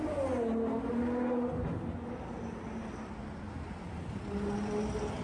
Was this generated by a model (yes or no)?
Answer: no